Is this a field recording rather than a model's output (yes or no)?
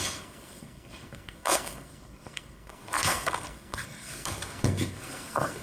no